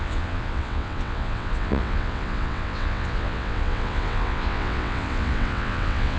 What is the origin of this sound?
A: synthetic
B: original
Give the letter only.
A